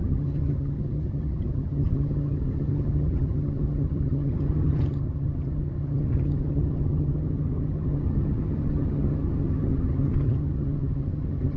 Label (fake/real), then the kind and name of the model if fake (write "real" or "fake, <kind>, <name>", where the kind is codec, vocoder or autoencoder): fake, vocoder, HiFi-GAN